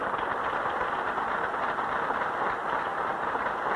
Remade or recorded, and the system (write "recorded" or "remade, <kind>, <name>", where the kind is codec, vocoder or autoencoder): recorded